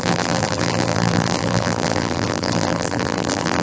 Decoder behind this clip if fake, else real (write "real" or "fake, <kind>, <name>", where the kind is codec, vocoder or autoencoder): fake, vocoder, BigVGAN v2